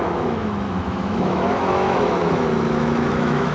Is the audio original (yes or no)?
no